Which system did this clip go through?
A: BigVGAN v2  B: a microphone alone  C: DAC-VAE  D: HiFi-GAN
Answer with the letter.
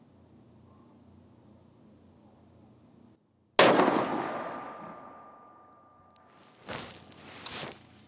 B